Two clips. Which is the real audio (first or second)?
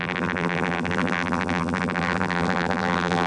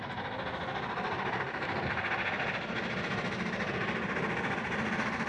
second